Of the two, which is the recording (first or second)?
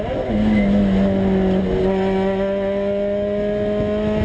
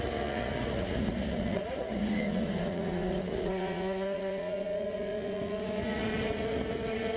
first